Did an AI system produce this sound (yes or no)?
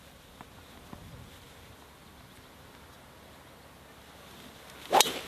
no